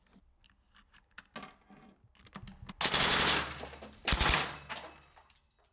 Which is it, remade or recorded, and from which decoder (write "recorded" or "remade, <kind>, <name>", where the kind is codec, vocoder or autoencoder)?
recorded